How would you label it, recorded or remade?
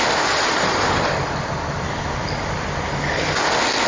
recorded